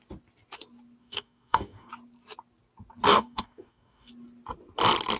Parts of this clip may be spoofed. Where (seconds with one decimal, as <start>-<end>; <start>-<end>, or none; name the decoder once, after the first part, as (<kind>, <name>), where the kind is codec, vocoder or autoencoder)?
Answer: 1.0-1.9 (codec, DAC); 3.1-4.1